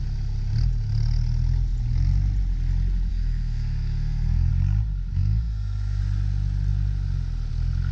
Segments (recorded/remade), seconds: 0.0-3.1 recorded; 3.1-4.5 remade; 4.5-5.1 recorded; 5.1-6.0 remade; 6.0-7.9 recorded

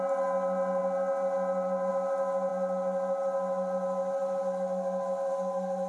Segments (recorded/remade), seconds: 0.0-5.9 recorded

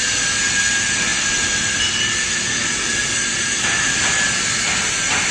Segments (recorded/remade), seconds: 0.0-5.3 recorded